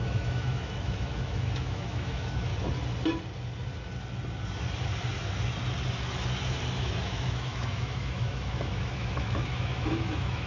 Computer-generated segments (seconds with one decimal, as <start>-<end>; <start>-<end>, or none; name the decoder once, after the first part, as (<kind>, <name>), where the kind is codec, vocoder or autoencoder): 0.0-2.5 (autoencoder, DAC-VAE); 6.8-10.5